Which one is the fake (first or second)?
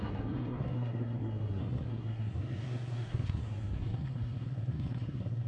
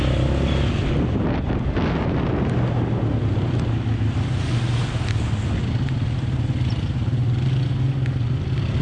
first